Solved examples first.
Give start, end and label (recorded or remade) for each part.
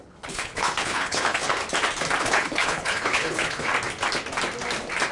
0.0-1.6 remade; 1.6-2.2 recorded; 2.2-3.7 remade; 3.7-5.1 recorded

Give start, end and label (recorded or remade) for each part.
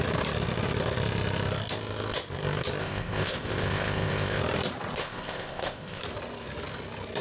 0.0-2.8 recorded; 2.8-4.4 remade; 4.4-5.0 recorded; 5.0-6.0 remade; 6.0-7.2 recorded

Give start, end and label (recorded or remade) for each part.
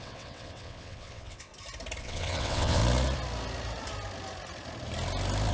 0.0-1.5 remade; 1.5-2.0 recorded; 2.0-2.8 remade; 2.8-5.5 recorded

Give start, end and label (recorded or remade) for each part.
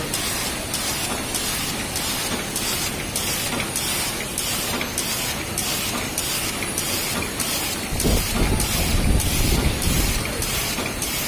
0.0-11.3 recorded